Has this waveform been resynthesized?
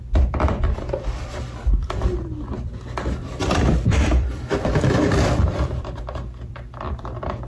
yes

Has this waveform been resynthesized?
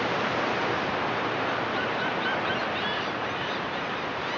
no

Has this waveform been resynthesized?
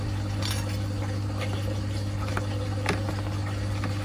no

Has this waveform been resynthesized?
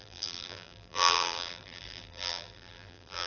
yes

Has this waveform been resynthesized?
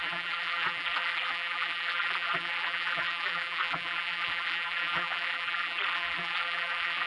yes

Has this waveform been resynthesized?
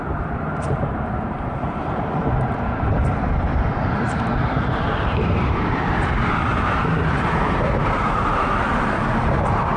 yes